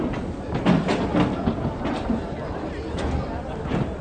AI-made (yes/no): no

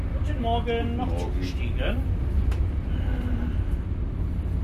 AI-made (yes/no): no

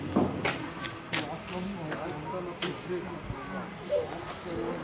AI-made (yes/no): no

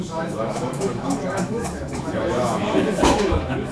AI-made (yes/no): yes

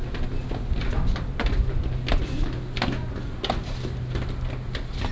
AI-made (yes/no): no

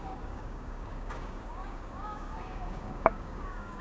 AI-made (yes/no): yes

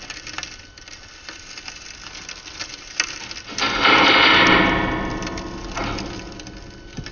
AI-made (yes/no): no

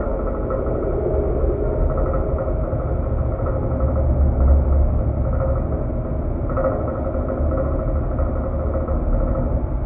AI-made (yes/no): no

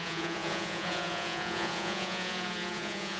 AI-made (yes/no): yes